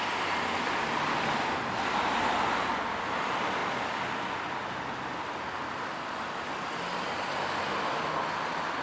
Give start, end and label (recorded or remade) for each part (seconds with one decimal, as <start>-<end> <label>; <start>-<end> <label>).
0.0-8.8 recorded